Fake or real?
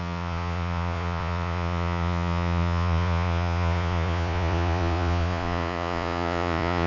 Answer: fake